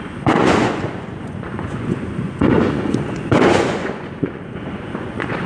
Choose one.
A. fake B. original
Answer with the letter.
A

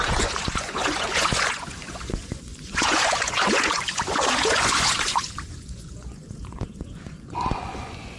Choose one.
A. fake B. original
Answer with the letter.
A